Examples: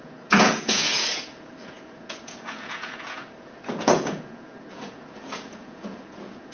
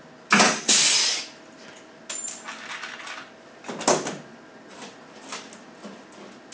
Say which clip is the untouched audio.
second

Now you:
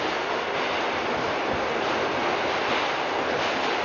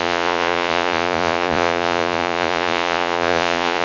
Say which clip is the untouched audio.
first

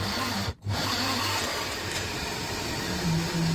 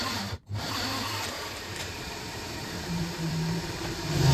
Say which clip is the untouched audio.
first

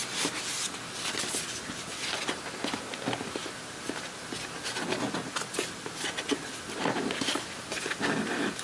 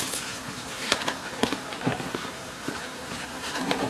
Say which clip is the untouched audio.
first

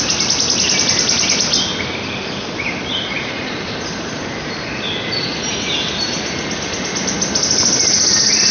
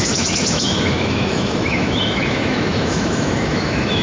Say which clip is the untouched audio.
first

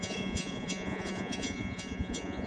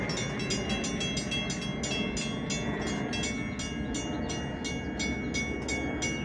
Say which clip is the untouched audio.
second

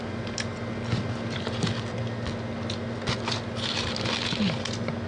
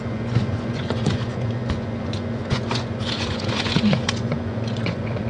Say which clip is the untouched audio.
first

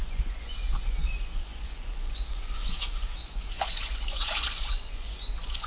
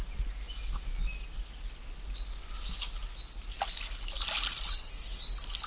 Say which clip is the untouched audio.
second